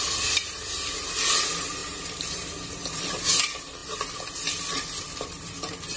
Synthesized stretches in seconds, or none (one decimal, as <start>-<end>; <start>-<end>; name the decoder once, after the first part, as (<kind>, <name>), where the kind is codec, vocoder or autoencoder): 1.8-3.2 (vocoder, BigVGAN v2)